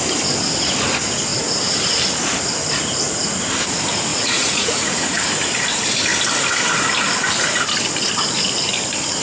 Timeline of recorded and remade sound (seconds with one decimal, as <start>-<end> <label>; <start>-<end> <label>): 0.0-4.1 recorded; 4.1-5.2 remade; 5.2-9.2 recorded